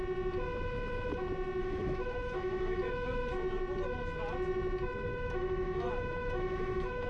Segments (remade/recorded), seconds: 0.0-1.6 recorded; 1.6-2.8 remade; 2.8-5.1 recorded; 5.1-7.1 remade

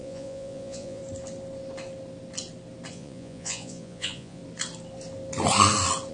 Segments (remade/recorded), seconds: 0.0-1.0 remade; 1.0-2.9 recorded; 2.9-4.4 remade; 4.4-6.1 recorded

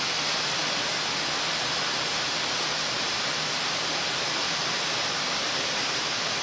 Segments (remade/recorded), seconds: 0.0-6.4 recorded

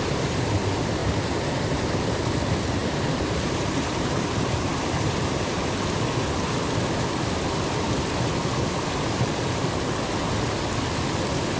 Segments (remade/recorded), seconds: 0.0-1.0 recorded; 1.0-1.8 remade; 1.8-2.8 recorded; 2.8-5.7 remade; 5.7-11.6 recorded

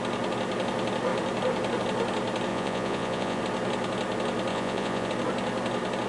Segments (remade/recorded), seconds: 0.0-2.5 recorded; 2.5-3.4 remade; 3.4-4.5 recorded; 4.5-5.1 remade; 5.1-6.1 recorded

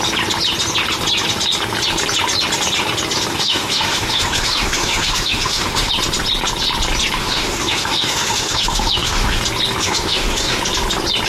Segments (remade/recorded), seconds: 0.0-3.3 recorded; 3.3-5.9 remade; 5.9-7.2 recorded; 7.2-9.4 remade; 9.4-9.8 recorded; 9.8-10.6 remade; 10.6-11.3 recorded